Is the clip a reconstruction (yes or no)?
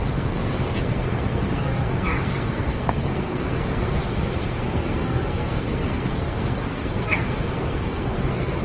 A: yes